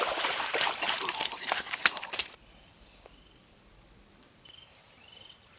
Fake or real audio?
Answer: fake